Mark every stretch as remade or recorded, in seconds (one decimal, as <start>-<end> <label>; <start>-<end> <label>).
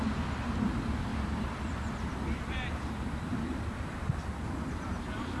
0.0-1.1 recorded; 1.1-3.3 remade; 3.3-5.4 recorded